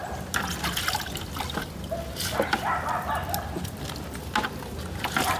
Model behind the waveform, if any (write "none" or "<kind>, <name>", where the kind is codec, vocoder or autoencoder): none